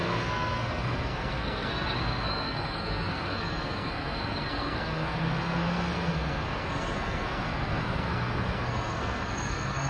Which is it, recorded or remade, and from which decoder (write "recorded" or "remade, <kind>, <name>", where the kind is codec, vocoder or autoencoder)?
remade, codec, SNAC